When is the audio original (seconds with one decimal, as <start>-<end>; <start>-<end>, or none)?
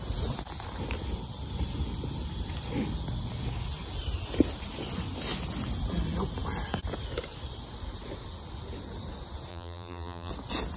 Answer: 0.0-9.5; 10.3-10.8